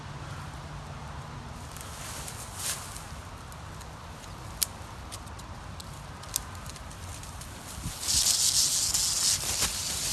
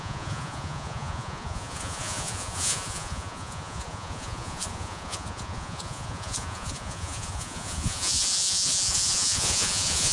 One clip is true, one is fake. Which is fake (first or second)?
second